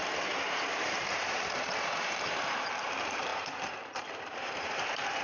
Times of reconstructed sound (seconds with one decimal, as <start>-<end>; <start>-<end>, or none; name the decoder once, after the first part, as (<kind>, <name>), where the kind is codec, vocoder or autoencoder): 0.0-5.2 (vocoder, BigVGAN v2)